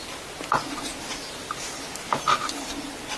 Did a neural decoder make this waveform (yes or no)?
no